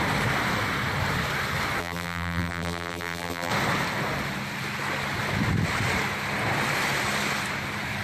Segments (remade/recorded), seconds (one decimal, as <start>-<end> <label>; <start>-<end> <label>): 0.0-1.8 recorded; 1.8-3.5 remade; 3.5-8.0 recorded